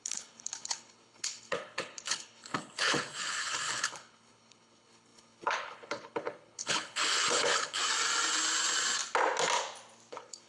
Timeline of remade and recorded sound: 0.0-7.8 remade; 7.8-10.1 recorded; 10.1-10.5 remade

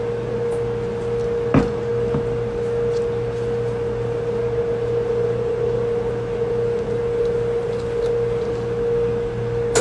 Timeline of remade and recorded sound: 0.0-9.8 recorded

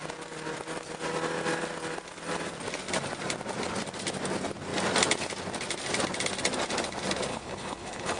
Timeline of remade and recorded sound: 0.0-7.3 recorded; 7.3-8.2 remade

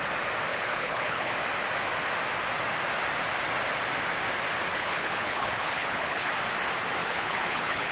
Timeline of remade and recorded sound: 0.0-0.5 recorded; 0.5-1.3 remade; 1.3-4.7 recorded; 4.7-6.3 remade; 6.3-7.0 recorded; 7.0-7.9 remade